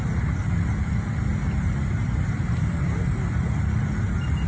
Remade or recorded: recorded